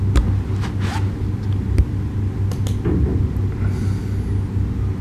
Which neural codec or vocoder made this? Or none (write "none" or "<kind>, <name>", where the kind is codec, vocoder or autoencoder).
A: none